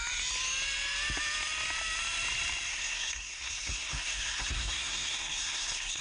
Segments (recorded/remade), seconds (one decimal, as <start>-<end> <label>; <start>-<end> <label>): 0.0-2.7 recorded; 2.7-6.0 remade